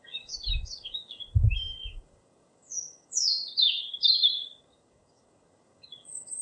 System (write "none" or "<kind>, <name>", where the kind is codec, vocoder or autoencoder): codec, DAC